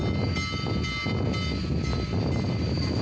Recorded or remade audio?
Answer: recorded